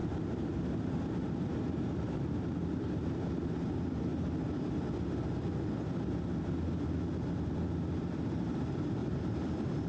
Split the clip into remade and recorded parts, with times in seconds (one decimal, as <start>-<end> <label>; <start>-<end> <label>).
0.0-4.1 remade; 4.1-8.0 recorded; 8.0-9.9 remade

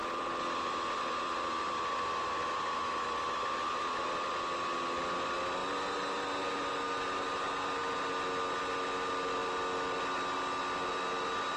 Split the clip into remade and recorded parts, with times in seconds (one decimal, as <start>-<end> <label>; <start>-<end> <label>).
0.0-3.8 remade; 3.8-11.6 recorded

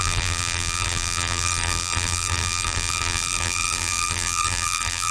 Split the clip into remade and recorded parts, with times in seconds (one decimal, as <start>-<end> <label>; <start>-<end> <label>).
0.0-5.1 remade

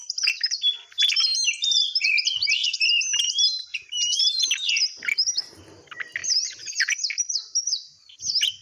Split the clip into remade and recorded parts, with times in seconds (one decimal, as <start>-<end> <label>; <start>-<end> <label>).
0.0-0.6 remade; 0.6-1.6 recorded; 1.6-2.3 remade; 2.3-3.7 recorded; 3.7-4.5 remade; 4.5-6.2 recorded; 6.2-6.9 remade; 6.9-8.6 recorded

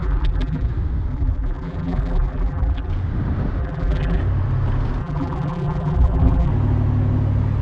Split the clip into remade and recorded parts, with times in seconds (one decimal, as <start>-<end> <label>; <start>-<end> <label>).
0.0-0.7 remade; 0.7-1.1 recorded; 1.1-2.9 remade; 2.9-3.6 recorded; 3.6-4.2 remade; 4.2-5.0 recorded; 5.0-6.5 remade; 6.5-7.6 recorded

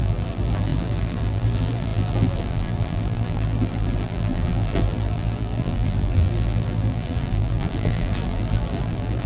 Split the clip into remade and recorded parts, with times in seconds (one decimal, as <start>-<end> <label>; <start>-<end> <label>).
0.0-9.3 remade

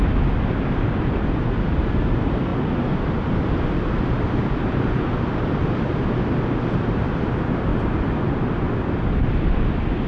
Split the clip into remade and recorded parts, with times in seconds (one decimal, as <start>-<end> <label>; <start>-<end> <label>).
0.0-7.7 recorded; 7.7-8.4 remade; 8.4-10.1 recorded

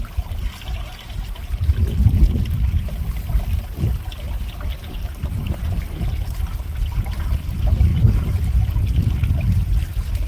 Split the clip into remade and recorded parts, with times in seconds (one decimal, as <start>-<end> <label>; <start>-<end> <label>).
0.0-7.9 recorded; 7.9-8.4 remade; 8.4-10.3 recorded